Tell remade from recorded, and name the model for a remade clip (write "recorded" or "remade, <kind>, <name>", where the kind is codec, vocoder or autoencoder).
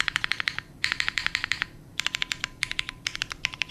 remade, vocoder, BigVGAN v2